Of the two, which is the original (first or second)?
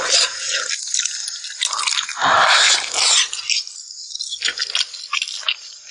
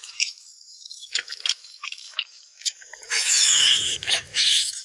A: first